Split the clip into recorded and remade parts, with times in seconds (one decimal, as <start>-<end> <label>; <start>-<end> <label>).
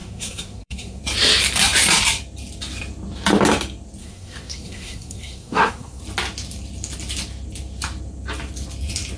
0.0-1.0 remade; 1.0-4.0 recorded; 4.0-6.0 remade; 6.0-9.2 recorded